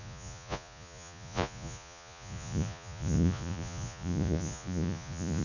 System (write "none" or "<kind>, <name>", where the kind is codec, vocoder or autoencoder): vocoder, Vocos